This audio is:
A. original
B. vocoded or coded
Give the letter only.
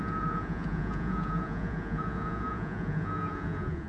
B